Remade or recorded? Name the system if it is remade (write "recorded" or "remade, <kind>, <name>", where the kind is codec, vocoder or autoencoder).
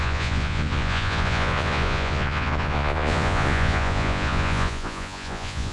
remade, vocoder, Vocos